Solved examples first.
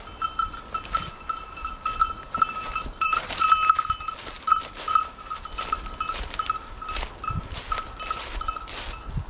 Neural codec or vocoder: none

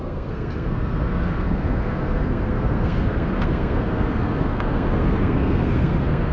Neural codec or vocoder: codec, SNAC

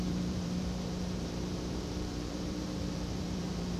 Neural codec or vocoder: vocoder, BigVGAN v2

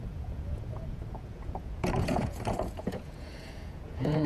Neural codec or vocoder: vocoder, Vocos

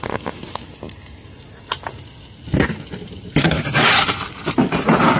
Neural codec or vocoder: none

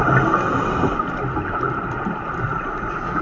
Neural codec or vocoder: none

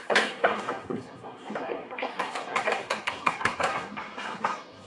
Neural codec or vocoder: codec, SNAC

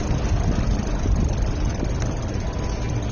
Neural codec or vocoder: none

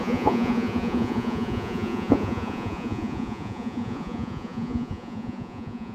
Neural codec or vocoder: vocoder, Vocos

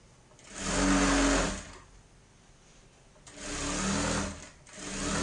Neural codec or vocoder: none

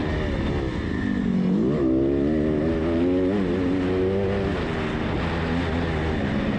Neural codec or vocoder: none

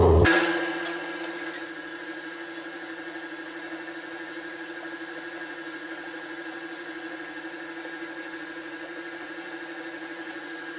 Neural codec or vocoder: vocoder, Vocos